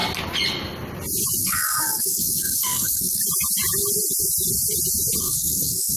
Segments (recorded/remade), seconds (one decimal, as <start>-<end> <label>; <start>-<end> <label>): 0.0-1.4 recorded; 1.4-3.2 remade; 3.2-5.2 recorded; 5.2-6.0 remade

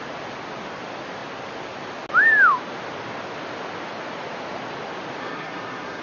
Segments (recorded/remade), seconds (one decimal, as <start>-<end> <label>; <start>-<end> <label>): 0.0-5.2 recorded; 5.2-6.0 remade